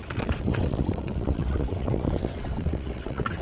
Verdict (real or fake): fake